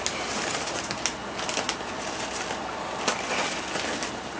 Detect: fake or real real